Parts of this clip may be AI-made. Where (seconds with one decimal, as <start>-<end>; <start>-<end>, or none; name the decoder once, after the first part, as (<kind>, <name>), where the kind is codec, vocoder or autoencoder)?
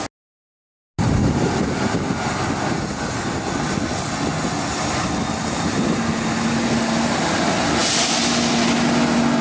none